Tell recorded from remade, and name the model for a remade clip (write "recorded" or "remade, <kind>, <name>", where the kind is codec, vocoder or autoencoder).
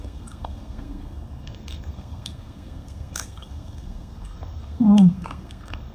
remade, codec, SNAC